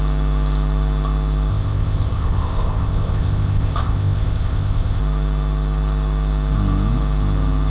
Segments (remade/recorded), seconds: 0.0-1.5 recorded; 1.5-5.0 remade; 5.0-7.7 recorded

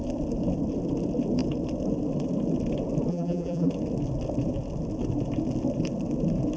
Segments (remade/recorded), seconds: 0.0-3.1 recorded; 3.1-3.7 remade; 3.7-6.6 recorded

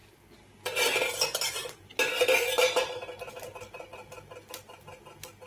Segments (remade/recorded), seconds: 0.0-5.5 recorded

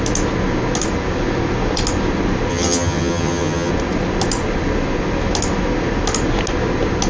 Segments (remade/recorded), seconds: 0.0-2.5 recorded; 2.5-3.7 remade; 3.7-7.1 recorded

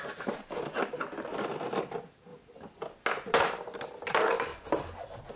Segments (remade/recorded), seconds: 0.0-5.4 recorded

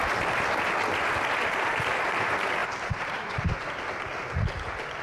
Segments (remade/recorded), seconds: 0.0-2.6 recorded; 2.6-3.7 remade; 3.7-5.0 recorded

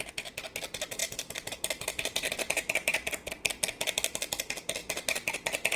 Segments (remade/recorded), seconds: 0.0-5.8 recorded

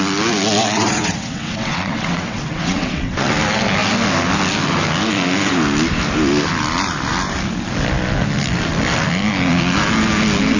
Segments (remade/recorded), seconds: 0.0-0.6 recorded; 0.6-3.3 remade; 3.3-10.6 recorded